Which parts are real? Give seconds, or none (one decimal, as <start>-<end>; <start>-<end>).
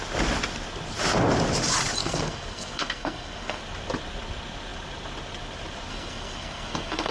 0.0-2.0; 3.6-5.9